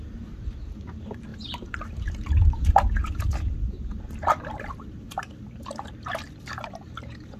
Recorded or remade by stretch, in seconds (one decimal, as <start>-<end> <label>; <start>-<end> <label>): 0.0-7.4 remade